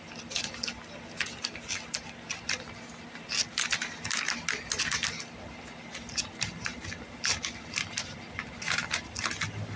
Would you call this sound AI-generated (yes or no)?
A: no